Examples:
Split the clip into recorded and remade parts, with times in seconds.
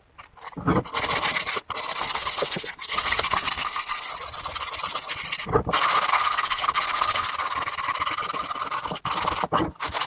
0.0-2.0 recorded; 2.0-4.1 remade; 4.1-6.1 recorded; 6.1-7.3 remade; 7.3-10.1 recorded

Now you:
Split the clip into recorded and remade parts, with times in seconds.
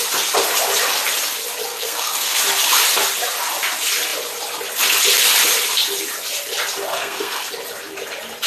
0.0-1.7 recorded; 1.7-2.4 remade; 2.4-6.9 recorded; 6.9-7.5 remade; 7.5-8.5 recorded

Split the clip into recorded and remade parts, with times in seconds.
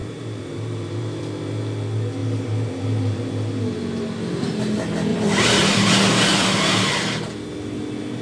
0.0-1.2 remade; 1.2-2.2 recorded; 2.2-3.2 remade; 3.2-5.1 recorded; 5.1-7.0 remade; 7.0-8.2 recorded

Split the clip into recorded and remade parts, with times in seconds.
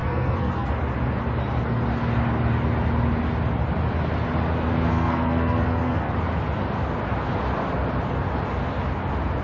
0.0-0.7 remade; 0.7-4.9 recorded; 4.9-6.1 remade; 6.1-9.4 recorded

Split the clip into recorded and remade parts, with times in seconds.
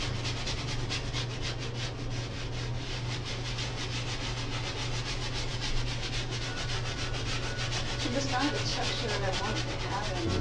0.0-2.7 recorded; 2.7-3.3 remade; 3.3-10.4 recorded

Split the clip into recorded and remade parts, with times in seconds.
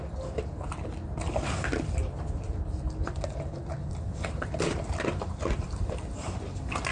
0.0-2.0 recorded; 2.0-6.1 remade; 6.1-6.9 recorded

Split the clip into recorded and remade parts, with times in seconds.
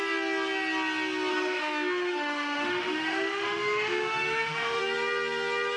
0.0-1.3 recorded; 1.3-4.8 remade; 4.8-5.8 recorded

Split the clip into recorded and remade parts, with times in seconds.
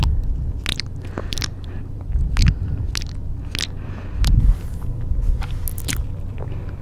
0.0-0.7 recorded; 0.7-2.4 remade; 2.4-6.8 recorded